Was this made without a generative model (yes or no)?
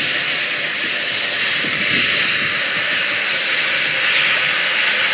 yes